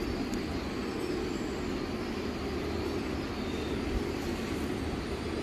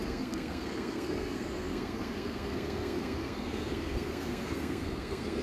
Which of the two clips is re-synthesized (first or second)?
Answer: second